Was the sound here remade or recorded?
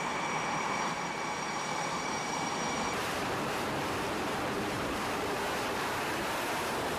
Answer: remade